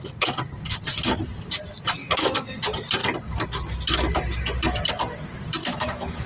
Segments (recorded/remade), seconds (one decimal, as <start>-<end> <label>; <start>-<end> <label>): 0.0-2.0 recorded; 2.0-2.6 remade; 2.6-5.6 recorded; 5.6-6.3 remade